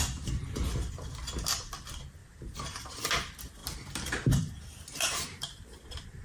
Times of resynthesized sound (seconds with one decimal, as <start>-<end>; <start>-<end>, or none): 2.2-3.0; 3.6-6.2